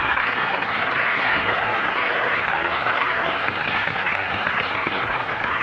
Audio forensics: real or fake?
fake